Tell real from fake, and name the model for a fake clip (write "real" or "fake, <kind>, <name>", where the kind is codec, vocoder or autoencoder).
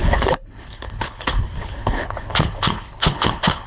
fake, codec, HILCodec